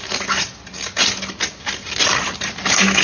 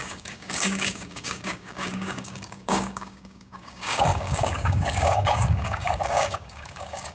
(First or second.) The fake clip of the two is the second